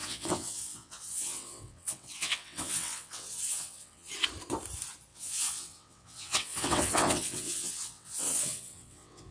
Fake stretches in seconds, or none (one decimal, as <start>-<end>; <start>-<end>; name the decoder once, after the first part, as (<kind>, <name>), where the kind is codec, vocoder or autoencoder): 0.0-4.1 (vocoder, WaveNeXt); 5.1-9.3